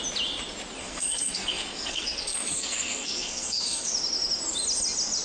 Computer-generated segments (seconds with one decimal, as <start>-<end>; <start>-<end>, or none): 0.8-3.9